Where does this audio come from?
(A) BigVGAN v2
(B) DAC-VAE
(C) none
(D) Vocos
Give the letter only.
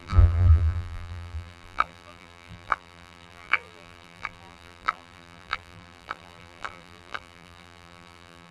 A